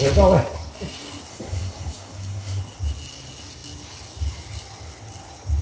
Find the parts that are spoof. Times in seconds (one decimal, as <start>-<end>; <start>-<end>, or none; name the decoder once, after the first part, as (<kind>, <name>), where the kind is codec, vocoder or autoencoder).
1.3-2.6 (codec, SNAC)